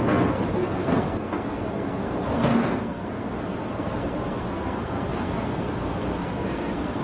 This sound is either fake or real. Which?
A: fake